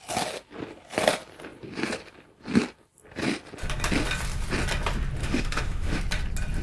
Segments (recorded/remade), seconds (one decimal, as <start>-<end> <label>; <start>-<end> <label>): 0.0-5.2 recorded; 5.2-6.0 remade; 6.0-6.6 recorded